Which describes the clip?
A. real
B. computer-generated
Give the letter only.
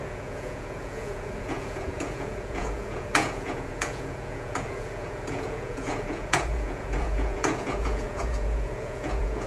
B